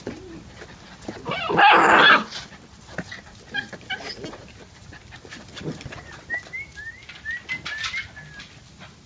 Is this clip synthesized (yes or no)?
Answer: no